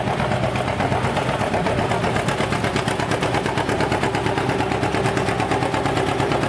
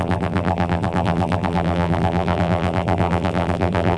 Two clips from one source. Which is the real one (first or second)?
first